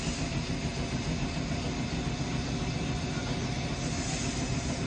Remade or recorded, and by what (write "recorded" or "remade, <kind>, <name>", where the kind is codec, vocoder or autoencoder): recorded